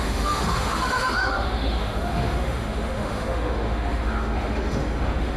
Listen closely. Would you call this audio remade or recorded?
remade